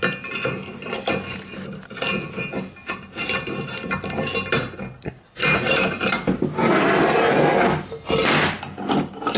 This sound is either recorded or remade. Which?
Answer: recorded